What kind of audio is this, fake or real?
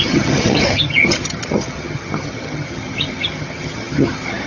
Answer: fake